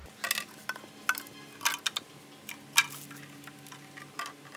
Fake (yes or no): no